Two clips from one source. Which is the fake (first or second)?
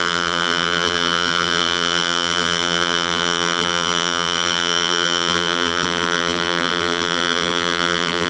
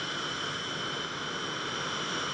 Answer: first